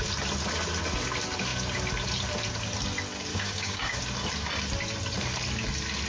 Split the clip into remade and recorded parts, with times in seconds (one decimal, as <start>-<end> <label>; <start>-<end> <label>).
0.0-3.3 recorded; 3.3-4.0 remade; 4.0-6.1 recorded